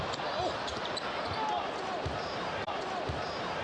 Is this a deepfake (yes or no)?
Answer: no